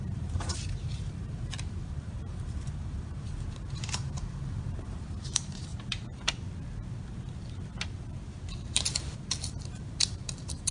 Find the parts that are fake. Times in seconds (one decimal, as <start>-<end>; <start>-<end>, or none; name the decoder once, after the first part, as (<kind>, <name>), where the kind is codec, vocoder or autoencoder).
0.0-5.7 (vocoder, BigVGAN v2); 8.9-10.7